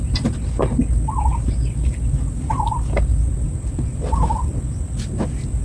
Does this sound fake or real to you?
real